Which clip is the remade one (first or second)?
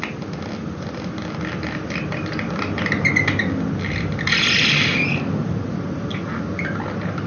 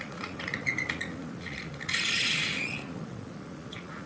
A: second